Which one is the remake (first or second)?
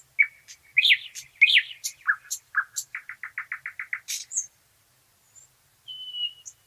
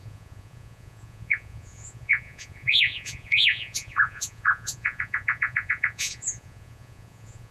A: second